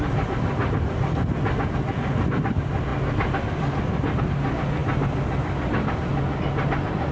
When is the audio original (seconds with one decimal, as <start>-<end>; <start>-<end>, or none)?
0.0-7.1